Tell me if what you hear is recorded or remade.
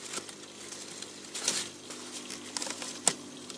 recorded